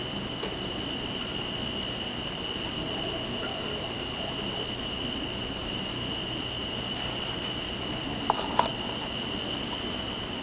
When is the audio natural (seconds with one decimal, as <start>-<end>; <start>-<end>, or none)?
0.0-10.4